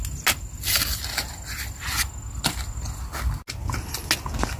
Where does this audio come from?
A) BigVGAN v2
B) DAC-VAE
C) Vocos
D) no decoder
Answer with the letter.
D